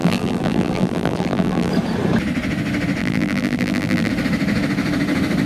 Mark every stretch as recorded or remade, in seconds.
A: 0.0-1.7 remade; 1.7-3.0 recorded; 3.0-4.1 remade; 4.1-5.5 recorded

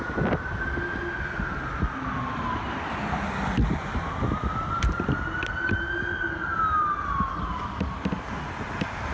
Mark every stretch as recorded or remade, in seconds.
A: 0.0-9.1 recorded

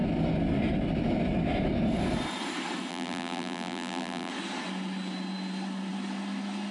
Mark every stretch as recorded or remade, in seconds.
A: 0.0-2.9 recorded; 2.9-4.3 remade; 4.3-6.7 recorded